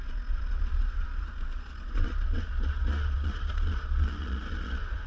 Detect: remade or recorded remade